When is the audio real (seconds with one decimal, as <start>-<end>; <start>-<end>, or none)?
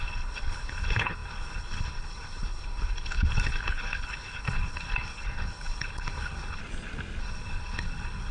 6.6-7.2